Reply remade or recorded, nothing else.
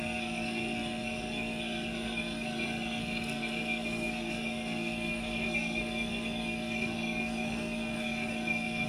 remade